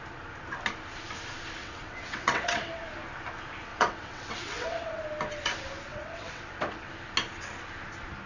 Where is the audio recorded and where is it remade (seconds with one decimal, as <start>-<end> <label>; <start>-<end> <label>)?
0.0-1.6 recorded; 1.6-2.8 remade; 2.8-3.7 recorded; 3.7-5.0 remade; 5.0-5.9 recorded; 5.9-6.9 remade; 6.9-8.3 recorded